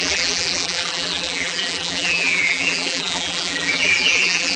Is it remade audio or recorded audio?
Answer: remade